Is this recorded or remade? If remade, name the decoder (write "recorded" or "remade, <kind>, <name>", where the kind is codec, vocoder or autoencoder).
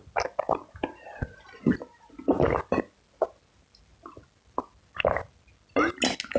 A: recorded